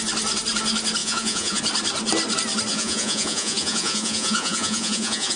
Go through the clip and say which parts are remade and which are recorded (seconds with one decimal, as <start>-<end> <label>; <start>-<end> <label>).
0.0-1.0 recorded; 1.0-1.6 remade; 1.6-2.7 recorded; 2.7-5.4 remade